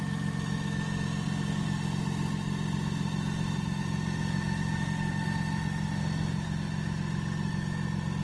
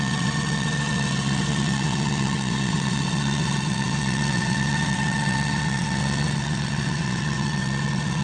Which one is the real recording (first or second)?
first